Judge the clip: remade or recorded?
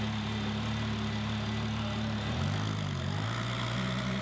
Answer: recorded